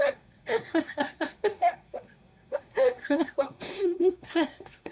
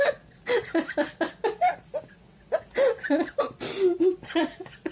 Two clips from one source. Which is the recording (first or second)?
second